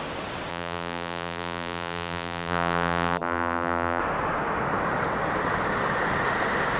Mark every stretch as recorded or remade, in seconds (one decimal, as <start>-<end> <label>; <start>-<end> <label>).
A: 0.0-0.5 recorded; 0.5-4.0 remade; 4.0-6.8 recorded